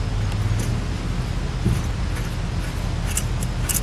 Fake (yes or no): no